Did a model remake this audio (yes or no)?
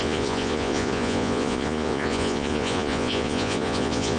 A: yes